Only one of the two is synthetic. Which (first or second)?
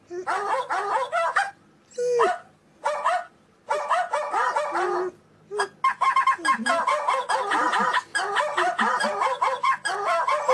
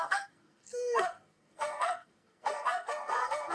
second